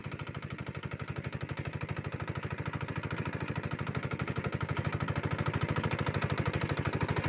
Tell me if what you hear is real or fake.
real